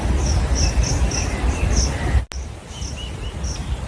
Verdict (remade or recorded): recorded